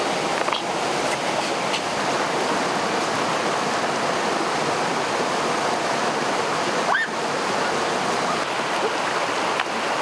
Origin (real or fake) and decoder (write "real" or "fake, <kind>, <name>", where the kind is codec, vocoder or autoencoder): real